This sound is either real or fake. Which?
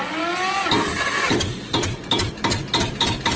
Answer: real